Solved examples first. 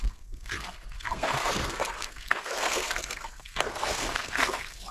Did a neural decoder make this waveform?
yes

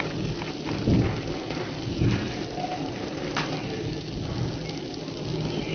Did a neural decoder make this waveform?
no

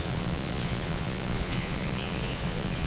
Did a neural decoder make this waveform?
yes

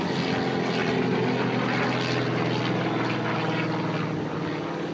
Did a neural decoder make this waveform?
no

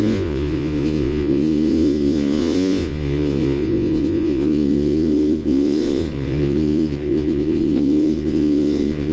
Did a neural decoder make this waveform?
yes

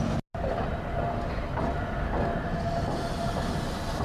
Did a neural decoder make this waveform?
no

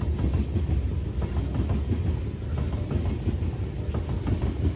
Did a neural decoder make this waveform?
no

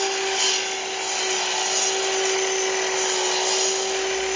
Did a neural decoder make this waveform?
no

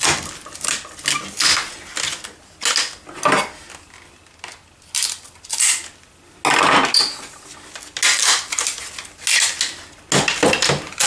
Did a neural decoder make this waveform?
no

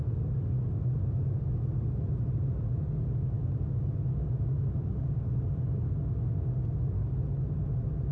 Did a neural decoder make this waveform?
no